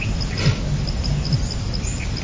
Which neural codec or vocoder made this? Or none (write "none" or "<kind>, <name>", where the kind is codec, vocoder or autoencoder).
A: none